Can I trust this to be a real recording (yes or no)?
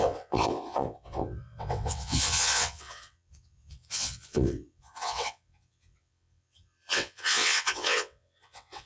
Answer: no